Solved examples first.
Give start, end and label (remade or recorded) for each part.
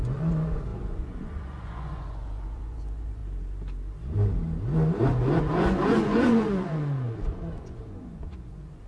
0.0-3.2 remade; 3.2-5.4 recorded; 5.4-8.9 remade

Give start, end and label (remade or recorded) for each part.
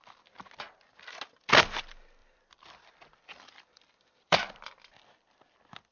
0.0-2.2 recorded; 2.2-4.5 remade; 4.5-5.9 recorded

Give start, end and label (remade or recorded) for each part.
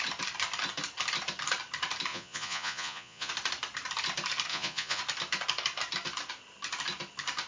0.0-2.1 recorded; 2.1-3.3 remade; 3.3-4.5 recorded; 4.5-5.0 remade; 5.0-7.5 recorded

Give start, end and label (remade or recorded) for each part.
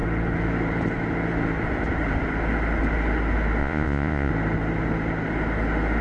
0.0-3.6 recorded; 3.6-4.3 remade; 4.3-6.0 recorded